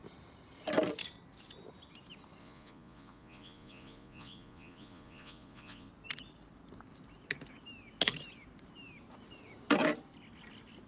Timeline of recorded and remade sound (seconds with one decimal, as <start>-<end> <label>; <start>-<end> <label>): 0.0-2.4 recorded; 2.4-5.9 remade; 5.9-10.9 recorded